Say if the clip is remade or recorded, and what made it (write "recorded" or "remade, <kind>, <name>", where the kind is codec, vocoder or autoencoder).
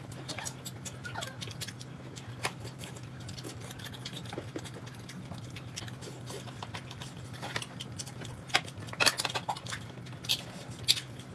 recorded